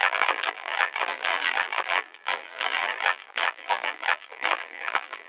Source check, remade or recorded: remade